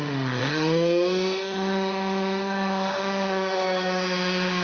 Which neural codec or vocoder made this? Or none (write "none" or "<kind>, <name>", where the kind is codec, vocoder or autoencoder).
autoencoder, DAC-VAE